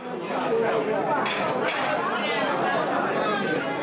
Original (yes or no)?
yes